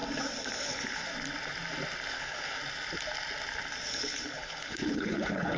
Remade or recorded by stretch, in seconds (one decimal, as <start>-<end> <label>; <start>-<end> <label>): 0.0-0.6 recorded; 0.6-1.1 remade; 1.1-2.1 recorded; 2.1-2.6 remade; 2.6-4.0 recorded; 4.0-5.6 remade